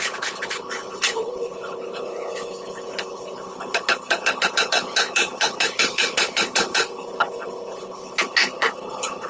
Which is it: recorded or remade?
remade